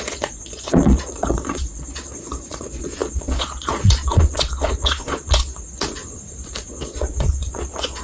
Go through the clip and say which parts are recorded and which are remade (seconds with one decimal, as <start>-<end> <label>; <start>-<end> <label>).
0.0-6.0 remade; 6.0-6.7 recorded; 6.7-8.0 remade